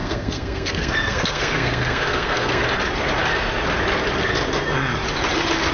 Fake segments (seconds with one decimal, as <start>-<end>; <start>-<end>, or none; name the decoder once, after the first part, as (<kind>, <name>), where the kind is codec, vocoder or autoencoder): 0.0-2.6 (codec, SNAC)